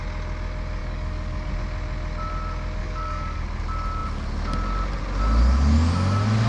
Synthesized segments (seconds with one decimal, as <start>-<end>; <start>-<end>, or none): 0.8-1.5; 2.8-3.4